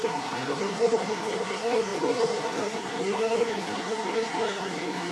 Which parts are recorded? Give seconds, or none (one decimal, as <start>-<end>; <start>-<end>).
none